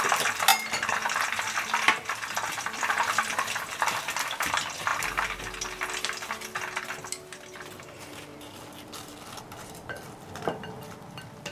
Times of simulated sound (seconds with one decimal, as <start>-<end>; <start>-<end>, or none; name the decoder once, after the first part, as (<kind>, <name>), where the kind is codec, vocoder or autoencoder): 4.9-5.4 (vocoder, BigVGAN v2)